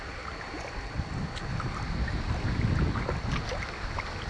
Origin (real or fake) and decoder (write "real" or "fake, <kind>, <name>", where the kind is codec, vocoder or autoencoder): real